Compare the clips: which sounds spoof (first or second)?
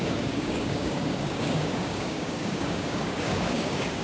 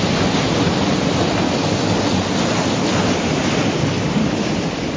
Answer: first